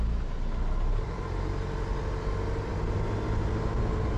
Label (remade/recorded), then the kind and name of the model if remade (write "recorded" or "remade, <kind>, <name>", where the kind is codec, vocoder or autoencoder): recorded